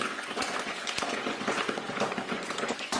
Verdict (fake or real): fake